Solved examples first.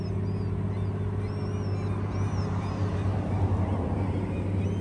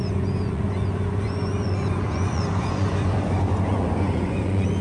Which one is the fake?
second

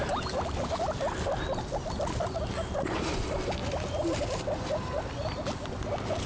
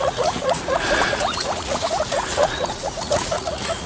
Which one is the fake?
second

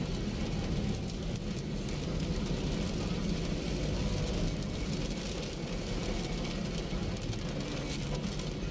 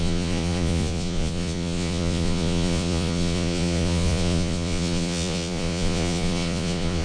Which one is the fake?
second